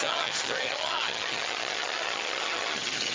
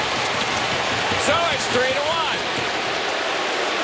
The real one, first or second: second